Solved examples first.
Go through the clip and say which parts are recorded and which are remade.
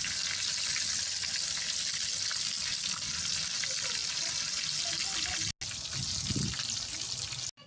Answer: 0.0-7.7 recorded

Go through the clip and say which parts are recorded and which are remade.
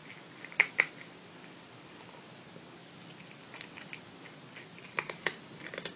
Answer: 0.0-6.0 recorded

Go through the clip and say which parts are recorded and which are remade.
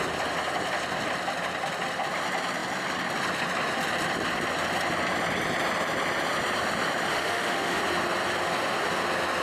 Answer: 0.0-7.1 recorded; 7.1-7.8 remade; 7.8-9.4 recorded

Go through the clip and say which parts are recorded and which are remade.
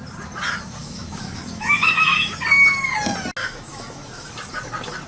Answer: 0.0-0.8 recorded; 0.8-2.4 remade; 2.4-3.4 recorded; 3.4-4.3 remade; 4.3-5.1 recorded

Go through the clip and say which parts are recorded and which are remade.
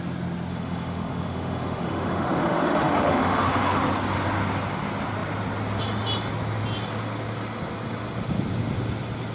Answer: 0.0-0.5 recorded; 0.5-3.8 remade; 3.8-9.3 recorded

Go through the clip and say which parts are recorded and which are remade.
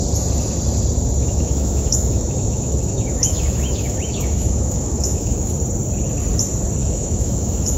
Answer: 0.0-1.2 recorded; 1.2-5.5 remade; 5.5-6.8 recorded; 6.8-7.8 remade